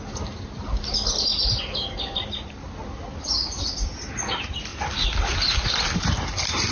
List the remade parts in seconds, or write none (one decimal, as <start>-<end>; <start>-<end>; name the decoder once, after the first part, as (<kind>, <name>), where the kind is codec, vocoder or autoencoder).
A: none